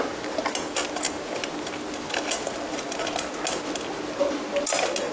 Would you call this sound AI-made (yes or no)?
no